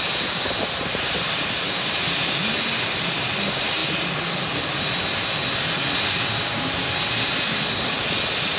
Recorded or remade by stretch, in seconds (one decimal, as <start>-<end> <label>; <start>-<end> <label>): 0.0-8.6 recorded